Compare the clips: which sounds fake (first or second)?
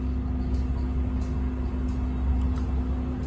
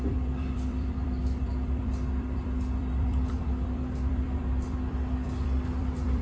second